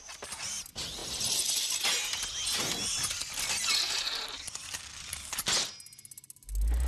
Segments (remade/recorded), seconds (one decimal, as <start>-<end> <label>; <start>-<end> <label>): 0.0-6.9 recorded